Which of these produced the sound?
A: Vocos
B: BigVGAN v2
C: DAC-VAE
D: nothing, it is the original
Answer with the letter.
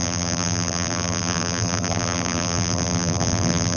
B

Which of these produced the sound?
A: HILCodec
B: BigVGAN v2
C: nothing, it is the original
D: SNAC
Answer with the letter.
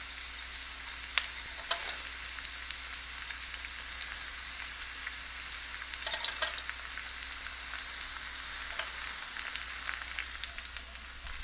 C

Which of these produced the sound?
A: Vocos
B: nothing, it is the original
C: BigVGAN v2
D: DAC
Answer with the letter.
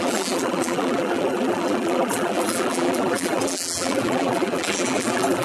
C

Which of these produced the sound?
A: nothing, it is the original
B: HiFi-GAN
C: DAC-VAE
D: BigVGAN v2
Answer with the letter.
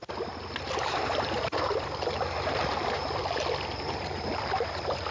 D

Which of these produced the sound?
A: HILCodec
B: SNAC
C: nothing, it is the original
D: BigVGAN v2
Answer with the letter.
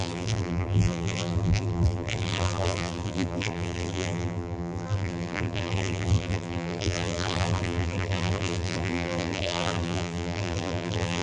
D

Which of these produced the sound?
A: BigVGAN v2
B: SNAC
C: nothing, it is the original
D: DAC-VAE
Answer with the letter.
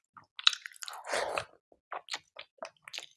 C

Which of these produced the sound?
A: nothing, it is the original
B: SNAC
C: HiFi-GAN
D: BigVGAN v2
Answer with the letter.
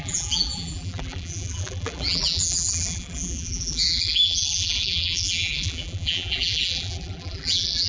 D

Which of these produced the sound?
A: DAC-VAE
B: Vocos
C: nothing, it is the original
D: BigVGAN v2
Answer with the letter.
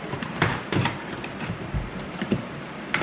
D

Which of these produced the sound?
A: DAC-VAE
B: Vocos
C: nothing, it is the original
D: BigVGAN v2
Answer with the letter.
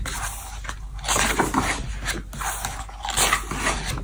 C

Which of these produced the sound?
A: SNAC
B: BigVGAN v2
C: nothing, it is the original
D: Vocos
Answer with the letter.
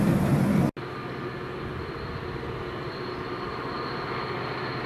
C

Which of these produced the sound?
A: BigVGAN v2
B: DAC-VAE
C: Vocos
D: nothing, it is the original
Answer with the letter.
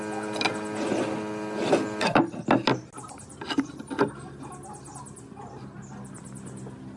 D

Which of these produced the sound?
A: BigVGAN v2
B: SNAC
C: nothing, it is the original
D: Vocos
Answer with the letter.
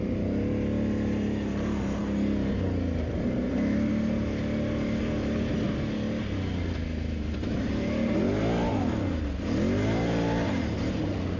C